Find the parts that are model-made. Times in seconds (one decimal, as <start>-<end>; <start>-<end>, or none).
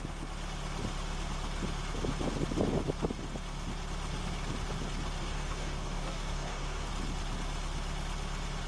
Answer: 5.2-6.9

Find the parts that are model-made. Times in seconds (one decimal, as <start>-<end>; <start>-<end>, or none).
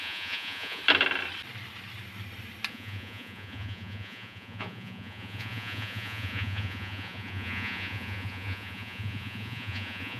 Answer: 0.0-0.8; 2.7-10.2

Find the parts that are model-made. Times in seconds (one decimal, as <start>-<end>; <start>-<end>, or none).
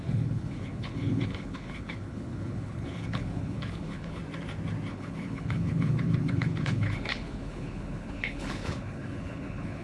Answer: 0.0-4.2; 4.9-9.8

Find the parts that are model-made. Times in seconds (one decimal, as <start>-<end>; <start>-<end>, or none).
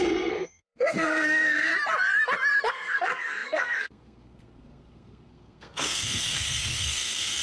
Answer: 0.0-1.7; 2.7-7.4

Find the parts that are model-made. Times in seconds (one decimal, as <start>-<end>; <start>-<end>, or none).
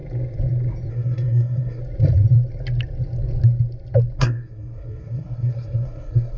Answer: 0.9-1.8; 4.2-6.4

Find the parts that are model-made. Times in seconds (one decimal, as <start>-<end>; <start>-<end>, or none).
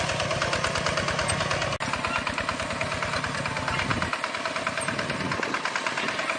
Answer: none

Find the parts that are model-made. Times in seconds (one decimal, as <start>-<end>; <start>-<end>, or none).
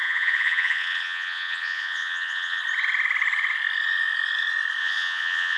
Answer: 0.0-2.6; 4.8-5.6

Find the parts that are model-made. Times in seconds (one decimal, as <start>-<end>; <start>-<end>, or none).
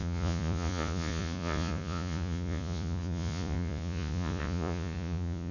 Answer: 0.0-5.5